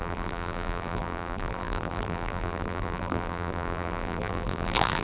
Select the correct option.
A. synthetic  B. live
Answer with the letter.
A